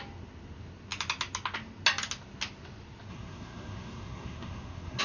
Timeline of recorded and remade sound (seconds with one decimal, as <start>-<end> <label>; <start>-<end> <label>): 0.0-3.1 recorded; 3.1-5.0 remade

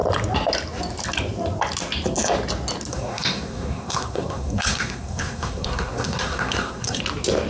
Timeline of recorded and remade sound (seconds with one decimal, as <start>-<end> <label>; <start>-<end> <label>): 0.0-2.9 recorded; 2.9-7.0 remade; 7.0-7.5 recorded

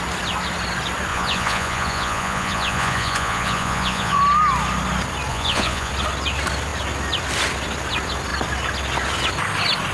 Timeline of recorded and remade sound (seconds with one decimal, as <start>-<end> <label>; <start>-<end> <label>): 0.0-1.1 recorded; 1.1-4.2 remade; 4.2-5.3 recorded; 5.3-5.9 remade; 5.9-9.9 recorded

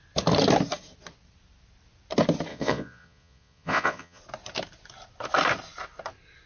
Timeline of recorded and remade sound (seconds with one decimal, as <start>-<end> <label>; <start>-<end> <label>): 0.0-2.5 recorded; 2.5-4.2 remade; 4.2-6.5 recorded

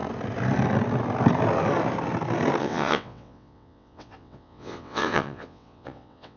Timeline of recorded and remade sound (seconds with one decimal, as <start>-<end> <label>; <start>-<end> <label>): 0.0-2.6 recorded; 2.6-6.4 remade